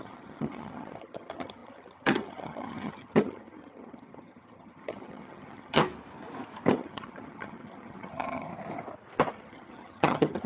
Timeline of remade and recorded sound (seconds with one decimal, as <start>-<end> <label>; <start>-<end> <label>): 0.0-5.8 remade; 5.8-6.7 recorded; 6.7-8.5 remade; 8.5-9.3 recorded; 9.3-10.5 remade